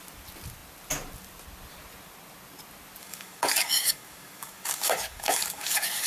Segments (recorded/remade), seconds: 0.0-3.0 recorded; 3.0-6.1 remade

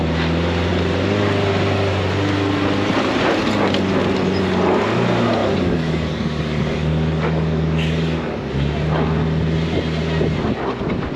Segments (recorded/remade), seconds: 0.0-5.4 recorded; 5.4-8.5 remade; 8.5-11.2 recorded

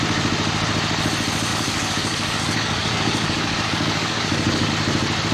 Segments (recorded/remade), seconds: 0.0-1.5 recorded; 1.5-4.7 remade; 4.7-5.3 recorded

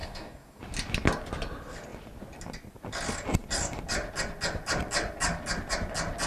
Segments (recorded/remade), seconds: 0.0-0.6 remade; 0.6-6.3 recorded